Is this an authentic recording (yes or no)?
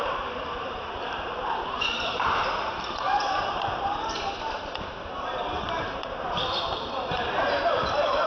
no